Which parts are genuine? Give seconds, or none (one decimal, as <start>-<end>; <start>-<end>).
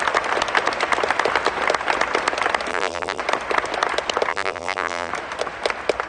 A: 0.0-2.7; 3.2-4.3; 5.1-6.1